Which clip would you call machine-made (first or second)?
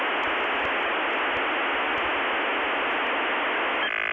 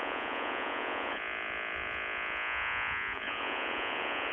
second